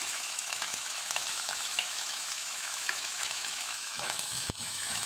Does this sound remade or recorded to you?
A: remade